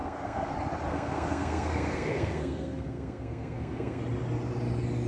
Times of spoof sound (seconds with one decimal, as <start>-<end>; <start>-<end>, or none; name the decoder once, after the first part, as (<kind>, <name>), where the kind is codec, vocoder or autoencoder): 0.0-0.5 (codec, SNAC); 0.9-4.0